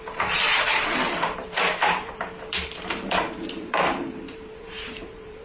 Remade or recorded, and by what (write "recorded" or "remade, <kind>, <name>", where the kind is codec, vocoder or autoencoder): remade, vocoder, BigVGAN v2